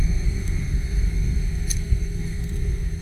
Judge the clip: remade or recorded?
remade